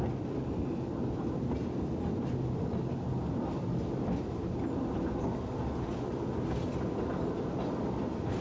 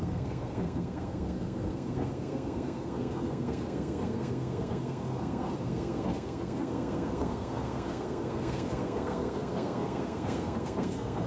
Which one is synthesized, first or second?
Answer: second